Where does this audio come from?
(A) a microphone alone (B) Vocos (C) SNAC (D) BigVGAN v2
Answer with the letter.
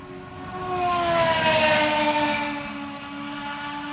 A